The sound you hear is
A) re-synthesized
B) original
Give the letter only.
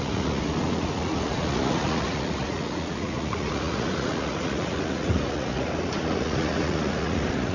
A